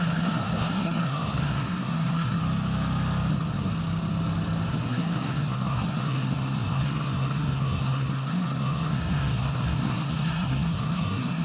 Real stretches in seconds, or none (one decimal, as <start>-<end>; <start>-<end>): 2.4-3.3; 3.7-4.7